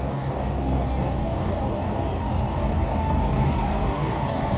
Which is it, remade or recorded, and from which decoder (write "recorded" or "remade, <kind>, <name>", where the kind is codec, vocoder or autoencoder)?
remade, codec, DAC